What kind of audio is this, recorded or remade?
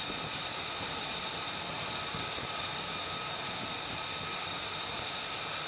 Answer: recorded